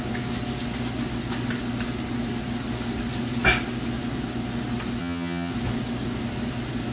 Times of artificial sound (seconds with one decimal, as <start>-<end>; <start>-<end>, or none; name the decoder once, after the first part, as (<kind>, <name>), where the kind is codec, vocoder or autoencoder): 5.0-5.5 (vocoder, HiFi-GAN)